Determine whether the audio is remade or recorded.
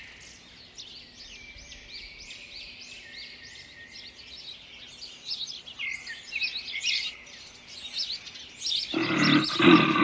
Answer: recorded